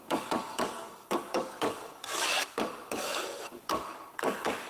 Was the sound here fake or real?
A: fake